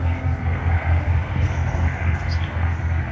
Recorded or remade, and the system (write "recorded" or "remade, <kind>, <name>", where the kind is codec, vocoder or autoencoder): remade, codec, SNAC